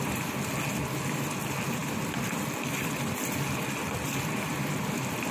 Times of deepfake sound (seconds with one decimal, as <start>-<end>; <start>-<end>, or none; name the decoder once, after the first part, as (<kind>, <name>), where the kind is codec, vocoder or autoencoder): none